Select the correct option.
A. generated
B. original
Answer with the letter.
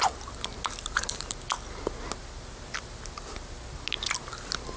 B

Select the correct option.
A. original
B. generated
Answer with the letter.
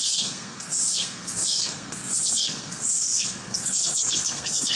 B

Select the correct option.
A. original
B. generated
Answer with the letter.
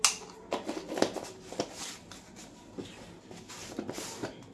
A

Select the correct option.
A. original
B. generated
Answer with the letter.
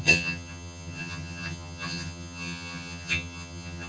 B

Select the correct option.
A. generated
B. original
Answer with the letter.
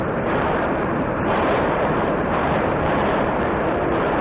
A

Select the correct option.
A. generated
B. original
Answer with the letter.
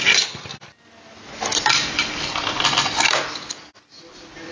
B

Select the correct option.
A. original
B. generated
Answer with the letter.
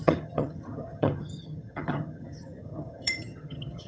B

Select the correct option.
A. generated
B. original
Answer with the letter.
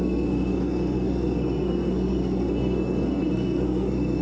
A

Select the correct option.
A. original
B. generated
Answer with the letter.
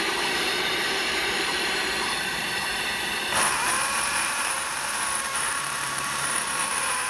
B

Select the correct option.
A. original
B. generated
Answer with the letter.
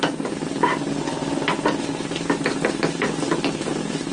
A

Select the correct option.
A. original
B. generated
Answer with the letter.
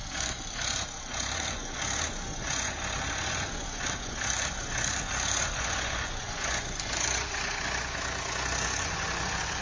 B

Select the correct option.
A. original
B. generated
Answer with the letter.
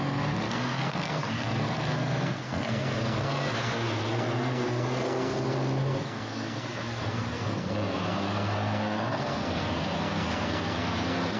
B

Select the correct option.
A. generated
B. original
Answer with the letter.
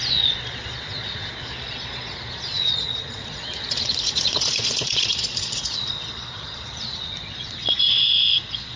A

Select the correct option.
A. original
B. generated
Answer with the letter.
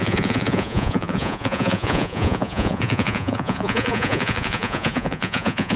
B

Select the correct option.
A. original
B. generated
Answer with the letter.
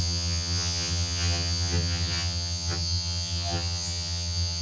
B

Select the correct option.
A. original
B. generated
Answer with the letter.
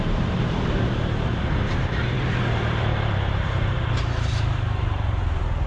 B